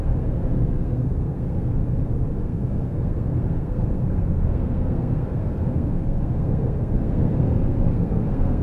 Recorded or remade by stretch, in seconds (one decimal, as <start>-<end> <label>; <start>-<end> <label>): 0.0-1.8 remade; 1.8-2.4 recorded; 2.4-8.6 remade